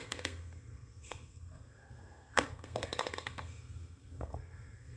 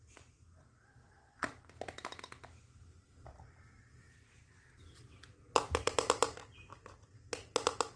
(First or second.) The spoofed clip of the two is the first